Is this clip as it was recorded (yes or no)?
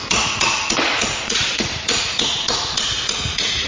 no